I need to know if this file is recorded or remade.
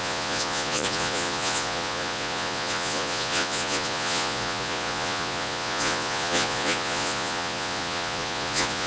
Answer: remade